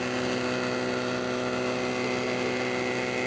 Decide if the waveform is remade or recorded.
recorded